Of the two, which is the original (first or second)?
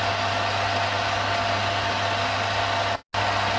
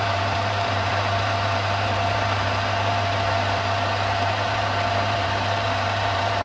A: first